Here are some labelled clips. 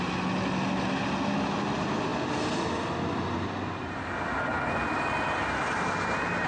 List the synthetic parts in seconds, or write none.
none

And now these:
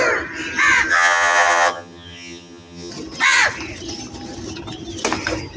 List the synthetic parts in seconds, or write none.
0.9-2.9 (vocoder, HiFi-GAN)

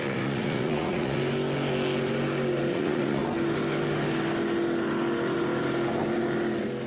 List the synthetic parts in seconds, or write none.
0.0-1.2 (vocoder, Vocos); 2.7-3.2

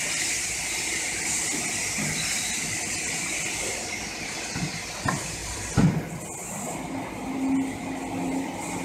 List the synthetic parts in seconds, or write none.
none

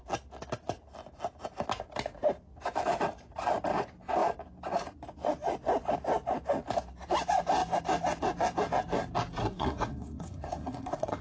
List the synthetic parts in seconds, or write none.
9.4-11.2 (codec, SNAC)

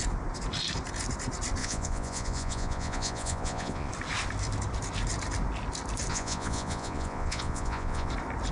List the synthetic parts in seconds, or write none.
1.6-3.9 (vocoder, Vocos); 6.1-8.1

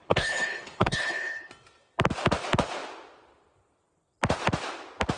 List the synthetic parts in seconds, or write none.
0.0-1.5 (codec, HILCodec)